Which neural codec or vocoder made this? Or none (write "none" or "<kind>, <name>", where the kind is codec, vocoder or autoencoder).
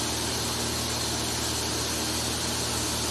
none